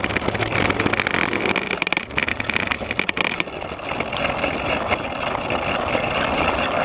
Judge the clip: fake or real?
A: real